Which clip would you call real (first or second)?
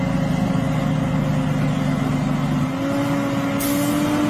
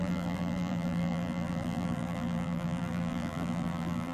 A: first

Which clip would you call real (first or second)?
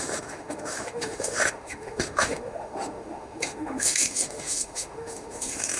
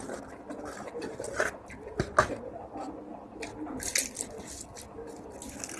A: second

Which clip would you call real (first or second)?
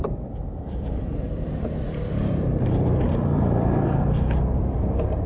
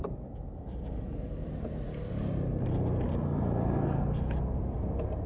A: second